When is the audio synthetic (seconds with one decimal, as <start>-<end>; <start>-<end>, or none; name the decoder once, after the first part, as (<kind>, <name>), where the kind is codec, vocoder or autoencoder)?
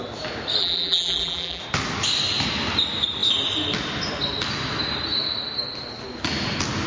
0.6-1.6 (vocoder, BigVGAN v2)